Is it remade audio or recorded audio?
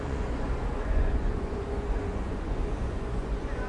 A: remade